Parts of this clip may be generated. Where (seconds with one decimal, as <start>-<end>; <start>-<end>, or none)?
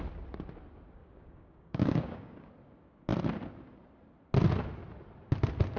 1.0-2.5